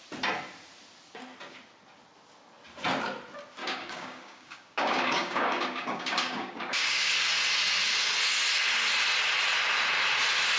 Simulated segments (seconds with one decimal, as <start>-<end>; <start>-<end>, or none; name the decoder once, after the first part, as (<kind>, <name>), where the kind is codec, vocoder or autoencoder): 3.6-7.1 (codec, DAC)